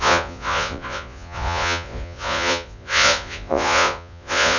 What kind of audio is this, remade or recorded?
remade